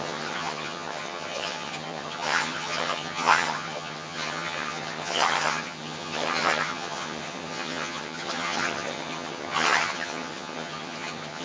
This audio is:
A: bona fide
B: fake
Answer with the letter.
B